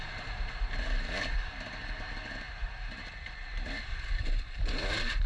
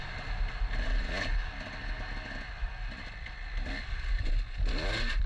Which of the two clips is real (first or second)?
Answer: second